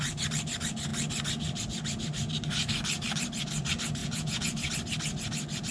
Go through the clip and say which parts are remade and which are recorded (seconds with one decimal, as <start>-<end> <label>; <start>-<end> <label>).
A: 0.0-4.0 recorded; 4.0-4.7 remade; 4.7-5.7 recorded